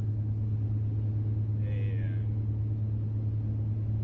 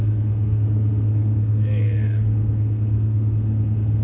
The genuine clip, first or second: first